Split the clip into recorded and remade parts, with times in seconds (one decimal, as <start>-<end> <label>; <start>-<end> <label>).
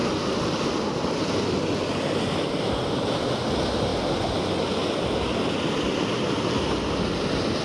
0.0-7.6 recorded